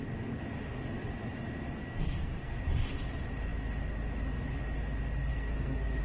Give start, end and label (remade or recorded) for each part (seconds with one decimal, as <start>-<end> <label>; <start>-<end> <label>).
0.0-1.8 recorded; 1.8-2.6 remade; 2.6-5.3 recorded; 5.3-6.0 remade